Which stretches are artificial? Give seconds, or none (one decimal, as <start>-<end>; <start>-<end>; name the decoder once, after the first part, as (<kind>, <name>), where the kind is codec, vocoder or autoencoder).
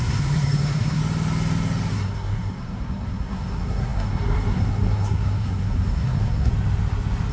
0.0-1.0 (codec, SNAC); 1.9-6.5